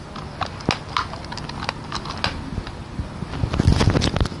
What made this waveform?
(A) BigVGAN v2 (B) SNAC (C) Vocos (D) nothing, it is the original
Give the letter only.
D